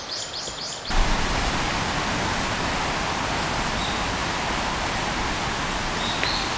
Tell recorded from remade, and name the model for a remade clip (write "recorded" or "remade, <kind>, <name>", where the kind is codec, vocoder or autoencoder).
recorded